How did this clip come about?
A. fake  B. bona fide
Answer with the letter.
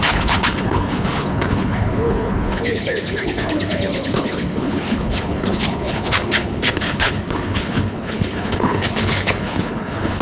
A